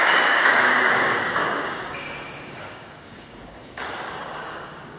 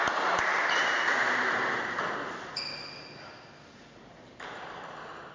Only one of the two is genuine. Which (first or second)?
second